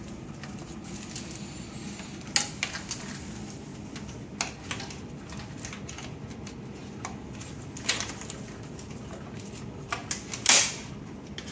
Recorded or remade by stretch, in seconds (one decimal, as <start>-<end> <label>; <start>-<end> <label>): 0.0-11.5 recorded